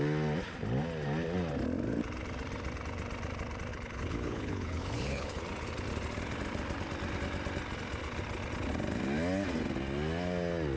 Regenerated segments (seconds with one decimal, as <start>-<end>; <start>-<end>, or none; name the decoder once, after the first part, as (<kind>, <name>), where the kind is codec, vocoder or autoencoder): 3.7-5.4 (codec, HILCodec)